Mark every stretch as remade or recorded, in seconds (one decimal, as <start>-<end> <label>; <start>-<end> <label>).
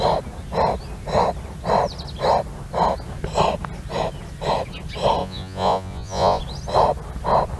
0.0-5.2 recorded; 5.2-6.4 remade; 6.4-7.6 recorded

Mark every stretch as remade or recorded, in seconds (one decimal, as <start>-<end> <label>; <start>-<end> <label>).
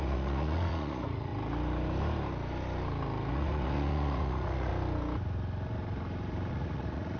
0.0-1.3 remade; 1.3-3.3 recorded; 3.3-4.7 remade; 4.7-6.5 recorded; 6.5-7.2 remade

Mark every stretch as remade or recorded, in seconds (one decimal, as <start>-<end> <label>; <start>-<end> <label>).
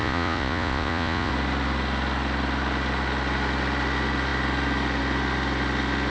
0.0-1.3 remade; 1.3-6.1 recorded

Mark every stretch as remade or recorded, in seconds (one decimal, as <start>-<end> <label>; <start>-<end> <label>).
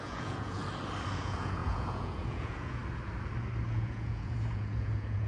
0.0-0.6 remade; 0.6-1.2 recorded; 1.2-2.8 remade; 2.8-3.7 recorded; 3.7-5.3 remade